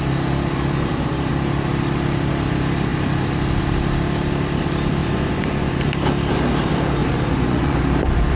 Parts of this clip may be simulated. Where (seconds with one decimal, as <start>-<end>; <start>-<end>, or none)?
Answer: 5.0-5.9; 7.0-7.8